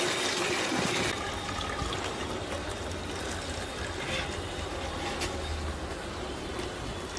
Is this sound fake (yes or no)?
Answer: no